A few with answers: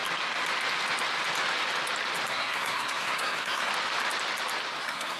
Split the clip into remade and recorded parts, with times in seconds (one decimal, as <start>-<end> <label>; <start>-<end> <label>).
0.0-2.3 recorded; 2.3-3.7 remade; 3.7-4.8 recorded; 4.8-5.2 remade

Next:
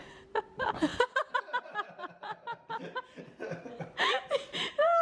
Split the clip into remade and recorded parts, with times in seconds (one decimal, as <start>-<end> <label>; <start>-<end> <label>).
0.0-2.2 remade; 2.2-3.0 recorded; 3.0-5.0 remade

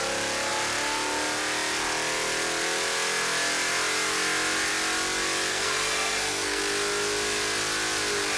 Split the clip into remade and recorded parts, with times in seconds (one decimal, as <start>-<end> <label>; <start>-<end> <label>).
0.0-5.5 recorded; 5.5-6.6 remade; 6.6-8.4 recorded

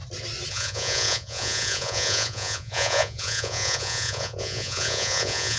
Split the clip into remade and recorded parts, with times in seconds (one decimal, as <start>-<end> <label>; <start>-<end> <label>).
0.0-0.5 recorded; 0.5-5.6 remade